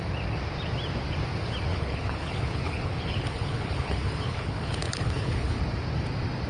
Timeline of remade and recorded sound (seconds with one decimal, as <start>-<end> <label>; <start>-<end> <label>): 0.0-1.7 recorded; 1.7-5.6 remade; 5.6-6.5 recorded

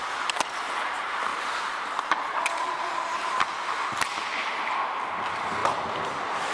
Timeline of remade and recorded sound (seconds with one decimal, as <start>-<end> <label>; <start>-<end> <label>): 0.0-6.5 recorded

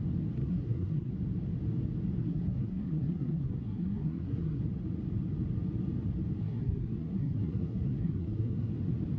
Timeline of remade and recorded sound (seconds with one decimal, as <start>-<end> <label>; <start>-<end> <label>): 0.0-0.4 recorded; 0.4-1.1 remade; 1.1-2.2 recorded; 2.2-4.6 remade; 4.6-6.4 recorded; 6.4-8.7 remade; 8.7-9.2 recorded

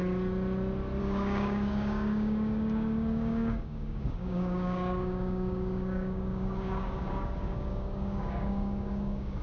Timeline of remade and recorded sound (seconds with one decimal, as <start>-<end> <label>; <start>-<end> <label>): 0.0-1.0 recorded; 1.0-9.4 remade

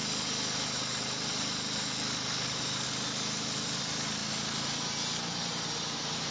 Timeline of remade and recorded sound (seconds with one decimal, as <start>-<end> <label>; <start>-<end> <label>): 0.0-6.3 recorded

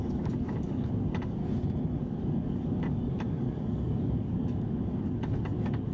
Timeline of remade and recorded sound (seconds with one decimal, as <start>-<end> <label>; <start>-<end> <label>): 0.0-1.4 remade; 1.4-2.0 recorded; 2.0-5.9 remade

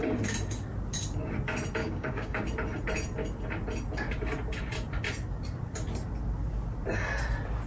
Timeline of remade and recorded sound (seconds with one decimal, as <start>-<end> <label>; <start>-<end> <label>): 0.0-1.8 recorded; 1.8-2.4 remade; 2.4-7.7 recorded